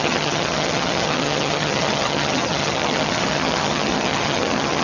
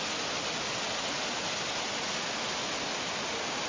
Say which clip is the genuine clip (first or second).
second